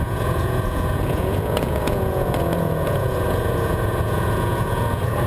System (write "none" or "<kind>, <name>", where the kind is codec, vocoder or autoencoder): vocoder, Vocos